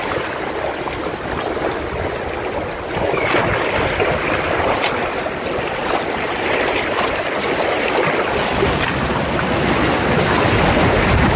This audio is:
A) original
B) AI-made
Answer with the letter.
A